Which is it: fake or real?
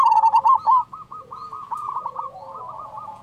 fake